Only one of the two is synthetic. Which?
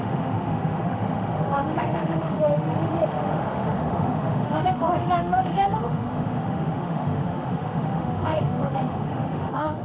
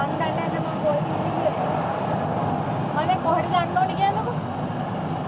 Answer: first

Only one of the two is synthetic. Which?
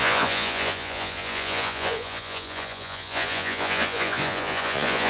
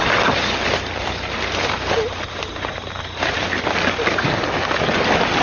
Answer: first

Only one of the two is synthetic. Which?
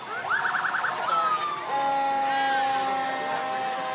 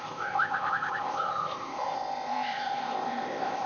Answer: second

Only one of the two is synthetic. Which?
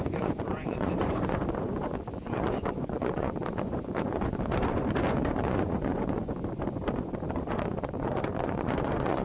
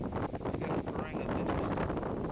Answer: first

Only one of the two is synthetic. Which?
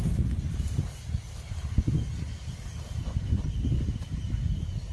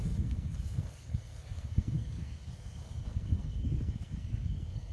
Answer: second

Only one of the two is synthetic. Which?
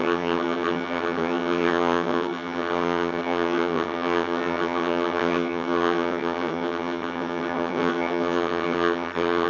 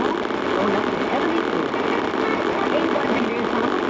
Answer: first